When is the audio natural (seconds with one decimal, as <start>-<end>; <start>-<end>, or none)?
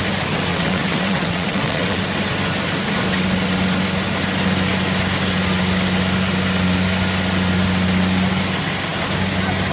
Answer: 0.0-0.5; 2.0-9.7